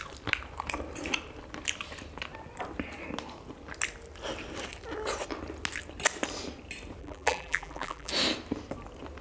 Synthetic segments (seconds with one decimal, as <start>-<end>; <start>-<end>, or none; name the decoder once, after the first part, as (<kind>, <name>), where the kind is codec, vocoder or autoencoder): 7.0-8.1 (vocoder, BigVGAN v2)